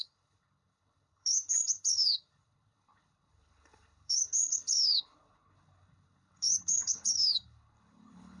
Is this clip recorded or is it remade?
remade